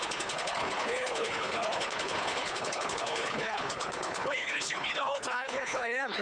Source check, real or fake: fake